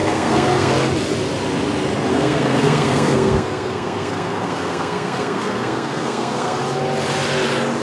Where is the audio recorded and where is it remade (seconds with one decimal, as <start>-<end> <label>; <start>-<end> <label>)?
0.0-0.7 remade; 0.7-2.1 recorded; 2.1-6.6 remade; 6.6-7.8 recorded